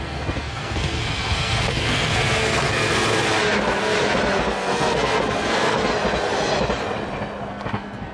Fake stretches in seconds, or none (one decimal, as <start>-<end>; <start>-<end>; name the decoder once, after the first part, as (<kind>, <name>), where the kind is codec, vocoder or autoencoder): 0.0-2.9 (codec, SNAC); 4.4-5.9; 7.5-8.1